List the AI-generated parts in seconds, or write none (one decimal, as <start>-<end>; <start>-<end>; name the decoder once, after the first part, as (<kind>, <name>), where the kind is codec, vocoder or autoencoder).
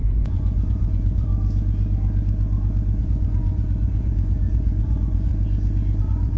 0.0-1.3 (vocoder, Vocos); 3.0-5.3; 6.0-6.4